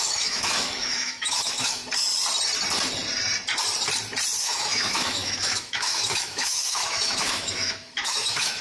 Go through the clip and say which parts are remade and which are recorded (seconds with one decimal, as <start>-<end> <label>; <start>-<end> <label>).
0.0-1.8 remade; 1.8-4.4 recorded; 4.4-8.6 remade